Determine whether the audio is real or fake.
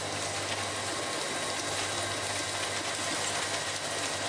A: real